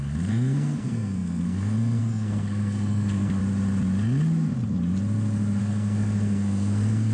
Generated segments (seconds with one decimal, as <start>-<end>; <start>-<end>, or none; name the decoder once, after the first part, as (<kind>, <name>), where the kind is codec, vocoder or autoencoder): 0.0-3.4 (codec, SNAC); 5.6-7.1